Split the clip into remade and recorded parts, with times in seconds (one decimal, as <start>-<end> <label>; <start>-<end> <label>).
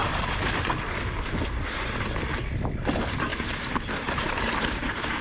0.0-3.3 recorded; 3.3-4.7 remade; 4.7-5.2 recorded